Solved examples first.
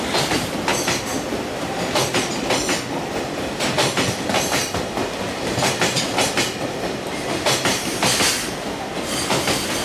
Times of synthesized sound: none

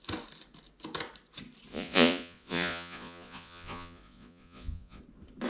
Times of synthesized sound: 1.7-5.0 (vocoder, Vocos)

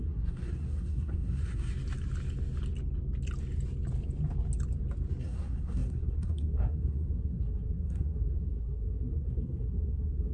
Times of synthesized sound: 0.0-1.7 (codec, SNAC); 5.2-10.3

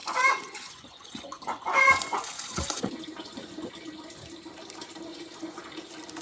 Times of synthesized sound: 0.0-3.7 (vocoder, Vocos); 5.1-5.6

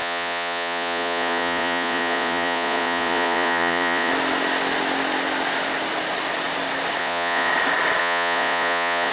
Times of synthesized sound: 0.0-4.1 (vocoder, Vocos); 7.0-7.5; 8.0-9.1

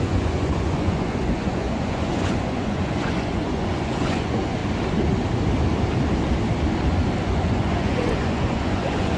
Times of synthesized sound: 0.0-4.6 (vocoder, Vocos); 7.2-9.2

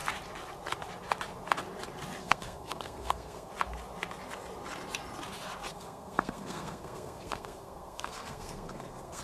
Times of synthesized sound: 2.2-3.5 (codec, SNAC); 5.7-9.2